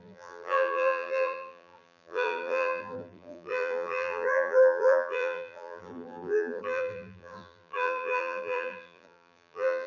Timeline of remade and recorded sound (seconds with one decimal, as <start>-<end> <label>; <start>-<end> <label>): 0.0-9.9 remade